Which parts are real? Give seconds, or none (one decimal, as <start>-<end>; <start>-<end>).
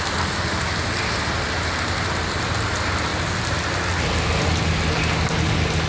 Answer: 0.0-5.9